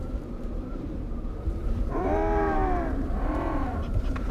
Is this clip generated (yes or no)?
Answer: yes